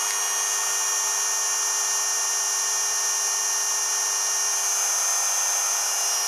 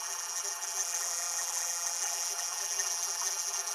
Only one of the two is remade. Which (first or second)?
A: second